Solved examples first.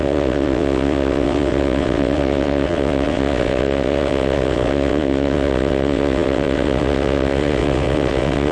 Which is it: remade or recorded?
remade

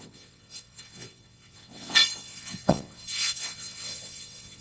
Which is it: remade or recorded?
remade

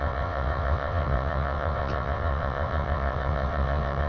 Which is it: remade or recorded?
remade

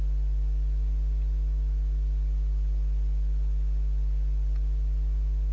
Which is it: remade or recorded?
recorded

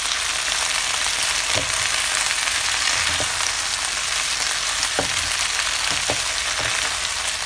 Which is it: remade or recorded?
recorded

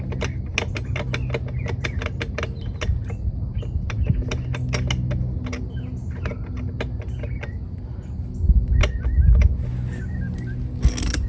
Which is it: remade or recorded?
recorded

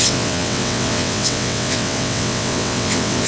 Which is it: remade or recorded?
remade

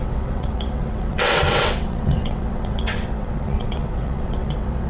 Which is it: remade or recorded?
remade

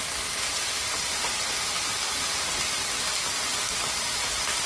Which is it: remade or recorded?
recorded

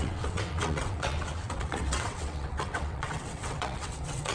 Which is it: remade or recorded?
remade